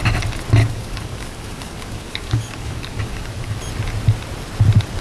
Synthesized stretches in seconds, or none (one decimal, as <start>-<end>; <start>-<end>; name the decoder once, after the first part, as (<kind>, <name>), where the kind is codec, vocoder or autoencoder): 0.6-3.6 (codec, DAC)